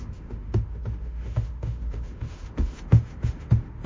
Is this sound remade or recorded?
remade